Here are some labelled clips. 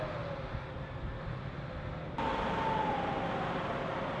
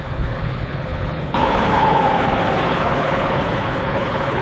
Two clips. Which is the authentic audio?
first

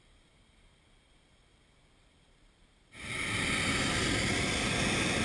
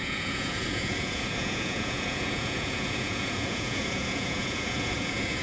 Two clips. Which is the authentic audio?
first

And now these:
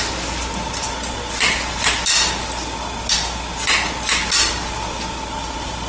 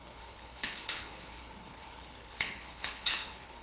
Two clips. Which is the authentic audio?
first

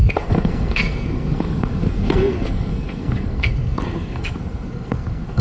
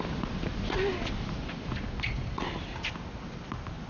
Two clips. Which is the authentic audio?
second